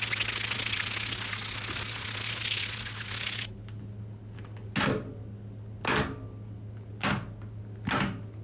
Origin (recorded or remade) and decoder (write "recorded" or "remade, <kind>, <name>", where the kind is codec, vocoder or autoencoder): recorded